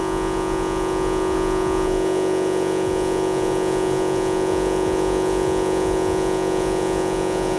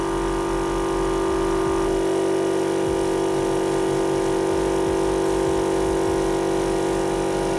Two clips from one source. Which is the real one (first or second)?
second